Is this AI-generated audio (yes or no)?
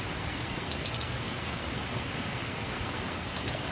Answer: yes